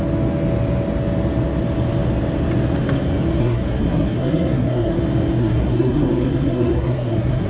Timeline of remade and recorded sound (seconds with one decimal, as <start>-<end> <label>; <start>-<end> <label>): 0.0-3.4 recorded; 3.4-5.0 remade; 5.0-5.4 recorded; 5.4-7.5 remade